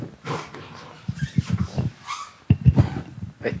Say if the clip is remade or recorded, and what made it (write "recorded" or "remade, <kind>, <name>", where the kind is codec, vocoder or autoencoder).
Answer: recorded